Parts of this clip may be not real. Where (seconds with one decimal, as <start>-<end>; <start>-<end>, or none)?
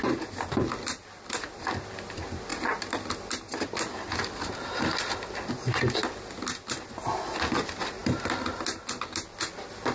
none